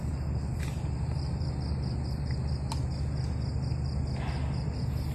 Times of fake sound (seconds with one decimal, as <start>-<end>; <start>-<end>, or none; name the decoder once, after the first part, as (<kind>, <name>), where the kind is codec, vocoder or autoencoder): 0.0-1.5 (vocoder, BigVGAN v2)

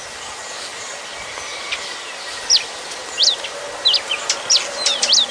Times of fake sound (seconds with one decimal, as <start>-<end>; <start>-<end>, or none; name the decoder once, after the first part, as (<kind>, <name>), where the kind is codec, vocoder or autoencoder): 0.7-3.7 (vocoder, BigVGAN v2)

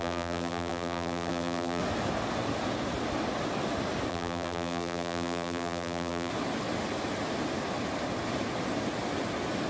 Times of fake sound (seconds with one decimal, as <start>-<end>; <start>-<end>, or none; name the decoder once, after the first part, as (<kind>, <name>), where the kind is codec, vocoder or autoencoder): 0.0-1.8 (vocoder, BigVGAN v2); 4.1-6.3

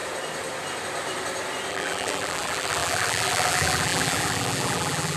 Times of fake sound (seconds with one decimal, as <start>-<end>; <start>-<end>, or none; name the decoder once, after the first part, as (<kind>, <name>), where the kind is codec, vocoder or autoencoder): 1.7-5.2 (vocoder, BigVGAN v2)

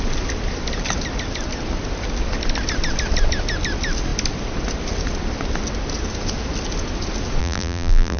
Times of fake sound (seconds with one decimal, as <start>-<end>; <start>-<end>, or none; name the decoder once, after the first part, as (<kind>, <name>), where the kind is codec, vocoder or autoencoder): 7.4-8.2 (vocoder, BigVGAN v2)

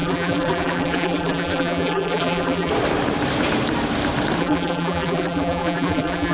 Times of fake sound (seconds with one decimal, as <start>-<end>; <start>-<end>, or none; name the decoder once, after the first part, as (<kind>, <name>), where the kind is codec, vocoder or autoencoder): 0.0-2.7 (vocoder, BigVGAN v2); 4.4-6.3